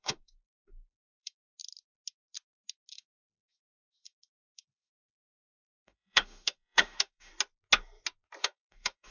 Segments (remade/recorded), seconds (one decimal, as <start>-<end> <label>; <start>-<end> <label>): 0.0-1.5 remade; 1.5-2.9 recorded; 2.9-7.3 remade; 7.3-8.4 recorded; 8.4-9.1 remade

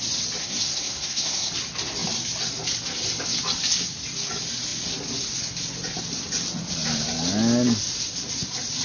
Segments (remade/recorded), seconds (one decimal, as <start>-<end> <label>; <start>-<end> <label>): 0.0-0.4 recorded; 0.4-1.5 remade; 1.5-8.8 recorded

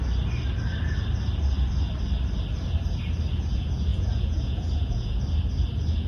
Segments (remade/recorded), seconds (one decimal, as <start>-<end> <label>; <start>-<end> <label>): 0.0-3.9 recorded; 3.9-5.2 remade; 5.2-6.1 recorded

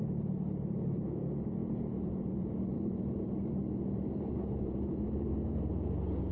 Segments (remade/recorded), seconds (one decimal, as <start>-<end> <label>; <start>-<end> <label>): 0.0-1.6 recorded; 1.6-5.3 remade; 5.3-6.3 recorded

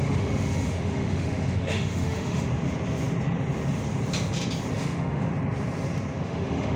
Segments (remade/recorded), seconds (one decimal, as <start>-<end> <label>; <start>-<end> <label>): 0.0-2.5 remade; 2.5-4.7 recorded; 4.7-5.3 remade; 5.3-6.2 recorded; 6.2-6.8 remade

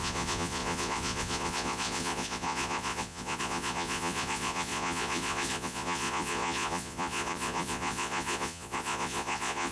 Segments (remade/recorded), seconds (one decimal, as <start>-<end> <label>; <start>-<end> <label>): 0.0-9.7 remade

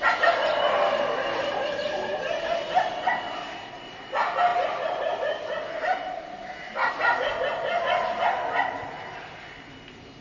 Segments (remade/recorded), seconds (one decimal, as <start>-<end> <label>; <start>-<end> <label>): 0.0-10.2 recorded

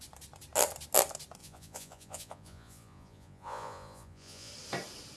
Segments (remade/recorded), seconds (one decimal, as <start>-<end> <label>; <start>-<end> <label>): 0.0-1.4 recorded; 1.4-4.5 remade; 4.5-5.2 recorded